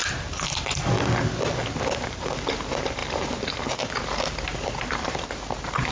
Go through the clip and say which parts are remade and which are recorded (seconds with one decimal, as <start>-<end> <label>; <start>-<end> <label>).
0.0-3.0 remade; 3.0-3.7 recorded; 3.7-5.9 remade